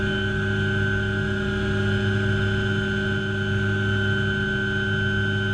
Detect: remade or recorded recorded